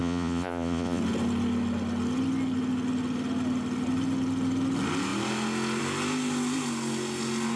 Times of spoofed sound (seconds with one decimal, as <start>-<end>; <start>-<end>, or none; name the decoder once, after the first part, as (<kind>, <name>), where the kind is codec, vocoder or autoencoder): 0.0-1.0 (vocoder, Vocos)